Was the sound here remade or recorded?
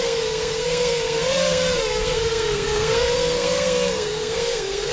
remade